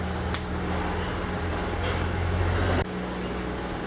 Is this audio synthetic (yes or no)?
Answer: no